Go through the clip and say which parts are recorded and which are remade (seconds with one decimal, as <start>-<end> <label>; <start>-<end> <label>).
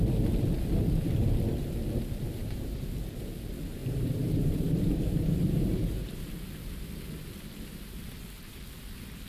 0.0-2.4 recorded; 2.4-2.9 remade; 2.9-3.8 recorded; 3.8-6.3 remade; 6.3-9.3 recorded